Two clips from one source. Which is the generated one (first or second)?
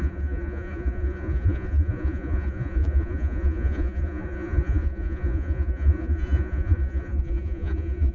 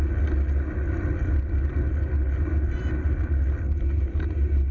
first